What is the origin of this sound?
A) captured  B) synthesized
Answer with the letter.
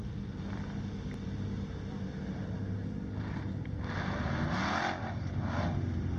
A